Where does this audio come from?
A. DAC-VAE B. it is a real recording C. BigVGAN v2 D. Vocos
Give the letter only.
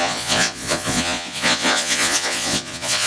D